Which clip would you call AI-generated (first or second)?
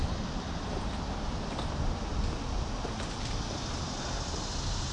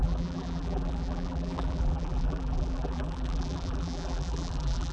second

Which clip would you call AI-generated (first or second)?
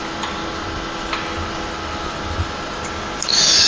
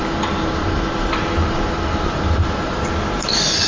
second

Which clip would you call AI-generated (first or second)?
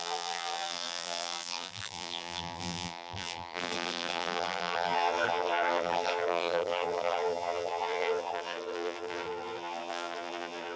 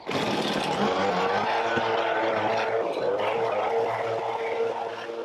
first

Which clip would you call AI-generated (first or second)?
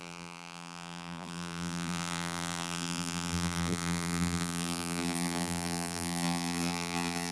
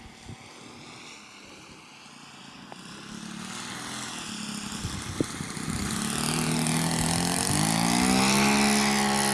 first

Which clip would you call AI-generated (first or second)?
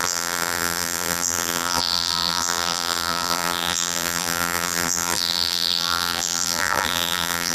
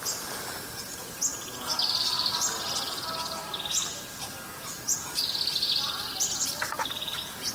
first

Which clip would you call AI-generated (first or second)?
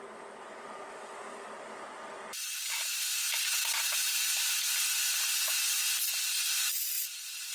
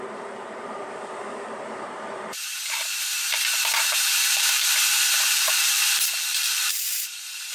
second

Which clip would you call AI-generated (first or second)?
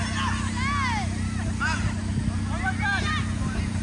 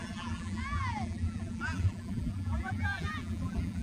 second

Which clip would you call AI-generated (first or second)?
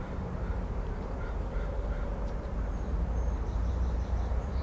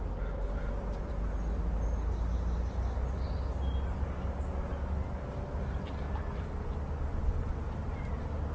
first